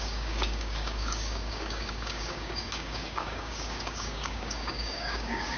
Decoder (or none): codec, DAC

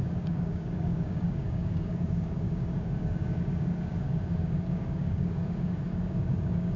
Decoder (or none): codec, DAC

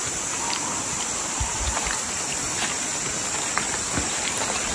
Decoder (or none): none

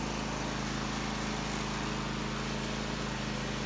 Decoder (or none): none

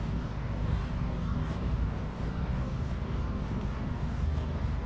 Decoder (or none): codec, DAC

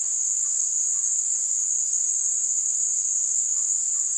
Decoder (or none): codec, DAC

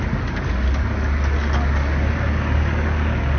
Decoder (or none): codec, DAC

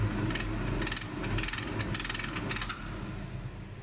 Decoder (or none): none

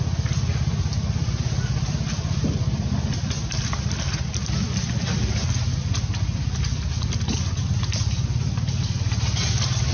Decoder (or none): none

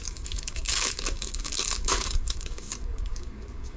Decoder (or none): codec, DAC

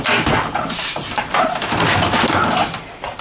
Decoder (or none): none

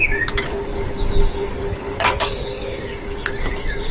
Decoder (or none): codec, DAC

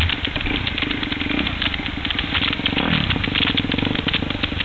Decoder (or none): none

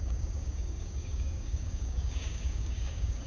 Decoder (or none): codec, DAC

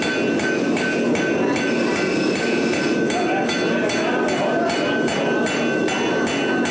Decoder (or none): none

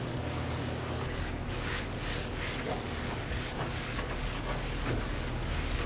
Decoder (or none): codec, DAC